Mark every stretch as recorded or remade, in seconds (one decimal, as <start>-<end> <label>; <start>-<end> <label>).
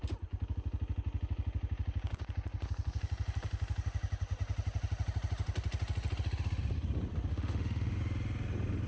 0.0-7.3 recorded; 7.3-8.0 remade; 8.0-8.9 recorded